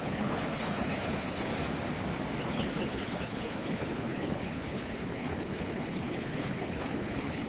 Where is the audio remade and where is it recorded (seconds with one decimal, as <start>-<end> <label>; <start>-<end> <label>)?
0.0-1.5 remade; 1.5-2.4 recorded; 2.4-7.5 remade